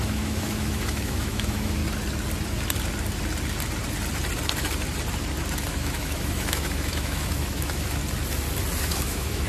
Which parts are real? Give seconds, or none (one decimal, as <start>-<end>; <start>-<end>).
1.8-5.7; 8.0-8.8